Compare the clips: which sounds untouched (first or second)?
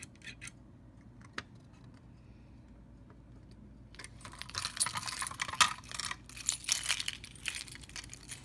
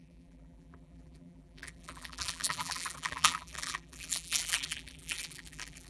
first